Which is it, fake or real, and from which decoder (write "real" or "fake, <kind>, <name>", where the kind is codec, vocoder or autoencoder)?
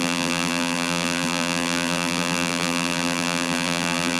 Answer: fake, vocoder, BigVGAN v2